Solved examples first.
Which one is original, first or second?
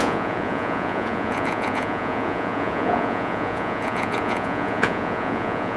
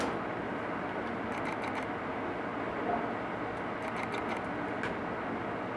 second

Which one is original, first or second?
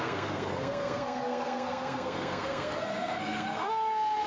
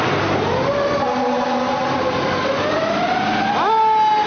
second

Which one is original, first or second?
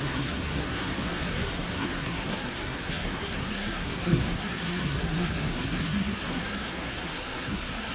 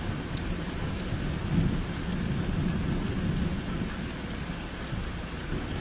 second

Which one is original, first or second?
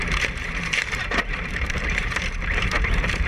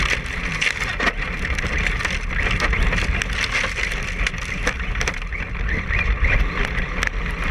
second